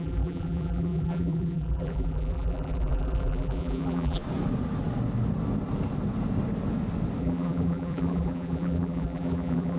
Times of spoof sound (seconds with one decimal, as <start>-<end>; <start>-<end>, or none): 0.0-4.2; 7.2-9.8